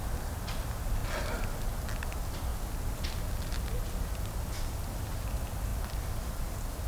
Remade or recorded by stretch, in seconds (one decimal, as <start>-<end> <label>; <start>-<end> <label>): 0.0-1.0 recorded; 1.0-1.6 remade; 1.6-2.5 recorded; 2.5-4.4 remade; 4.4-6.9 recorded

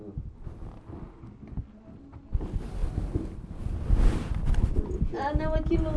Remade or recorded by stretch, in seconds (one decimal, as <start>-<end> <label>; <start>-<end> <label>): 0.0-6.0 recorded

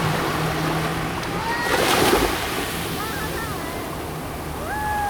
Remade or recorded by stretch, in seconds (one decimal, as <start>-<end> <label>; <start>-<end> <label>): 0.0-0.9 recorded; 0.9-3.0 remade; 3.0-5.1 recorded

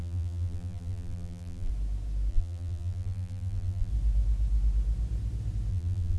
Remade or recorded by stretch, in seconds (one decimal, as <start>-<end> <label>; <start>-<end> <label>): 0.0-1.7 remade; 1.7-2.3 recorded; 2.3-3.9 remade; 3.9-5.7 recorded; 5.7-6.2 remade

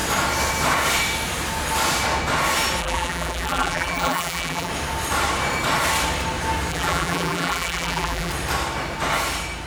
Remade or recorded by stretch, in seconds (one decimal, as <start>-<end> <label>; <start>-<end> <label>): 0.0-2.8 recorded; 2.8-4.7 remade; 4.7-6.7 recorded; 6.7-8.3 remade; 8.3-9.7 recorded

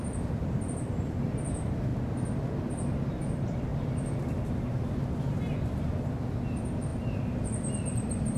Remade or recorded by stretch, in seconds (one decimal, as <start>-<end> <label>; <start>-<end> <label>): 0.0-1.9 remade; 1.9-3.3 recorded; 3.3-8.4 remade